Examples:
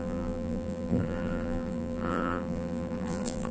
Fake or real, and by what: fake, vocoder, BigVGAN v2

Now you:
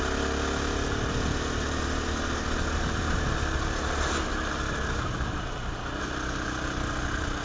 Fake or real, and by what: real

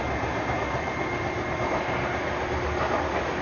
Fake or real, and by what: real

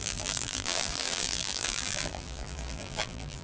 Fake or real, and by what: fake, vocoder, BigVGAN v2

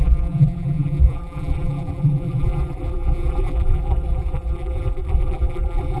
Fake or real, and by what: fake, vocoder, BigVGAN v2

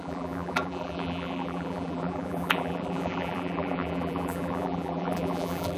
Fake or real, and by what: fake, vocoder, BigVGAN v2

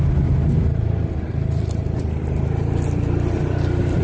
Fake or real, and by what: real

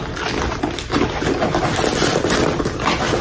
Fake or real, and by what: real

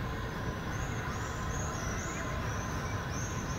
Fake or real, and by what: real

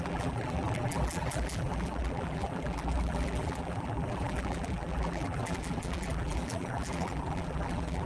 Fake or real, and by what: fake, vocoder, BigVGAN v2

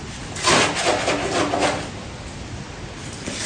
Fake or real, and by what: real